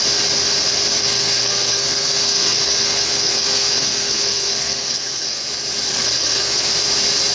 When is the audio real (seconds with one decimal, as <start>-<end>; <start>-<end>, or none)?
0.0-1.0; 5.4-5.9; 6.7-7.3